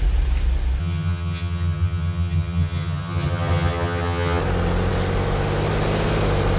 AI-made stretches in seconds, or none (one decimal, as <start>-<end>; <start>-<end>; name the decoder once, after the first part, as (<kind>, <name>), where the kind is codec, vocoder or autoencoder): 0.8-4.4 (vocoder, HiFi-GAN)

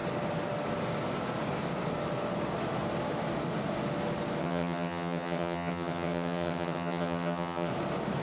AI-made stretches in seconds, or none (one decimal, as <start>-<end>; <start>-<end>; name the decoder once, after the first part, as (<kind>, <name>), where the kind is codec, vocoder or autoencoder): 4.4-7.7 (vocoder, HiFi-GAN)